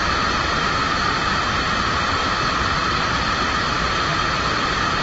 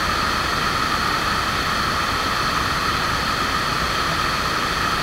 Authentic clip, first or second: second